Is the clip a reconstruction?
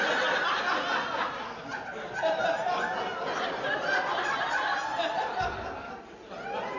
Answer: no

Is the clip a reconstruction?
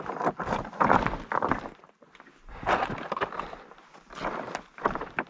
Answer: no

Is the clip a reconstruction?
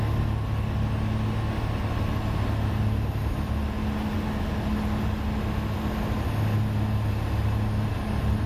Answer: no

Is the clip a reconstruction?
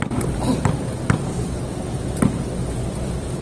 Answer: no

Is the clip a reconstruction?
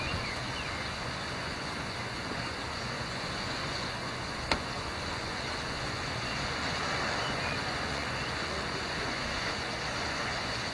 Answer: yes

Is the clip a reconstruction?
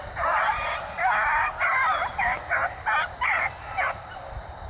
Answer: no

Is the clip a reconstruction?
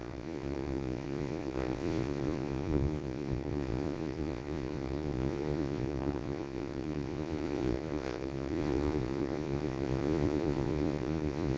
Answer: yes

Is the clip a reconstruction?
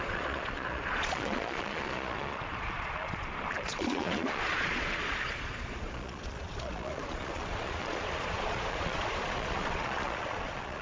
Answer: yes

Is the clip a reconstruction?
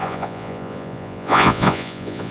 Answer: yes